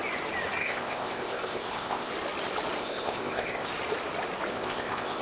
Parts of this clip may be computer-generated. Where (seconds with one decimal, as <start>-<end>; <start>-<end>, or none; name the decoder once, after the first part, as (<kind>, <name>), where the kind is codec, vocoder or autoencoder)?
0.6-2.1 (codec, ZipCodec); 2.8-3.7; 4.5-5.2